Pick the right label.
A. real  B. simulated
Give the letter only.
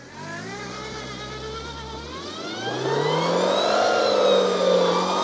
A